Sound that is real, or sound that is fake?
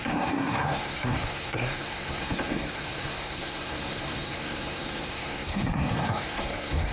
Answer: fake